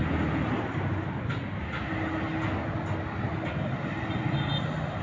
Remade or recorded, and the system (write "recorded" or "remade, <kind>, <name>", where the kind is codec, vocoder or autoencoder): recorded